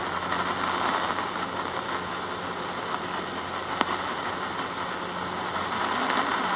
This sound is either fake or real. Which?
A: real